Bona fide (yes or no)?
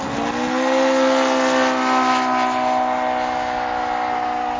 yes